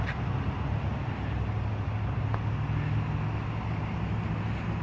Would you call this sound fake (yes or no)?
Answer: no